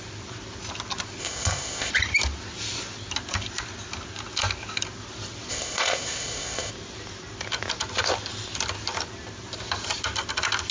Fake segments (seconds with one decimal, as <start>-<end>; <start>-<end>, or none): 1.2-1.9; 5.5-6.7